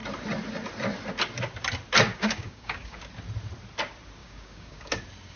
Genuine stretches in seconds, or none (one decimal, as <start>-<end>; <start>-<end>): 0.0-2.1; 3.0-4.2; 4.9-5.4